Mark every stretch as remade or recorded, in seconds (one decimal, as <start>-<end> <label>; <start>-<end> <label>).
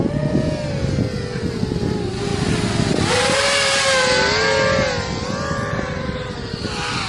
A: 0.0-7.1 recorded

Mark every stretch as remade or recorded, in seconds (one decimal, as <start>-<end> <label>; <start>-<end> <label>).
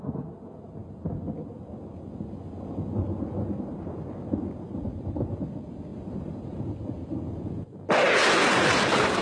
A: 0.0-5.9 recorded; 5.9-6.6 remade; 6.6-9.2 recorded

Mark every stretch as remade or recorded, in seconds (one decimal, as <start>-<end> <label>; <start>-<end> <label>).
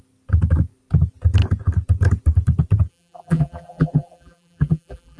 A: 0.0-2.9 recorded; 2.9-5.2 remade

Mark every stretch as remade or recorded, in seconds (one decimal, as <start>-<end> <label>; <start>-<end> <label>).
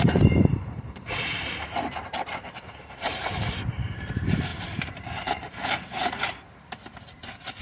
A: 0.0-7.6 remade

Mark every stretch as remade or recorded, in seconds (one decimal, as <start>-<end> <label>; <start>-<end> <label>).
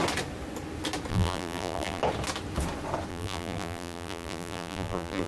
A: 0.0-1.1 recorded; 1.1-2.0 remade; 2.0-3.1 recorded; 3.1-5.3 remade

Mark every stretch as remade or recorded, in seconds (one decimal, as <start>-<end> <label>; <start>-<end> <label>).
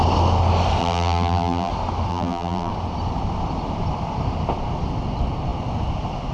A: 0.0-0.8 recorded; 0.8-1.7 remade; 1.7-2.1 recorded; 2.1-2.7 remade; 2.7-6.3 recorded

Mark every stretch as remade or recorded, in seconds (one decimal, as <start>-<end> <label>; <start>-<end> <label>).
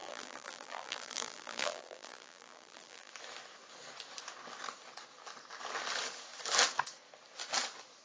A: 0.0-3.1 remade; 3.1-8.0 recorded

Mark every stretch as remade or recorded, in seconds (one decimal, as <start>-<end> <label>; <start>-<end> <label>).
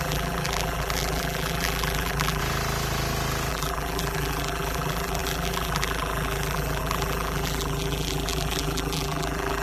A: 0.0-2.4 remade; 2.4-3.5 recorded; 3.5-9.6 remade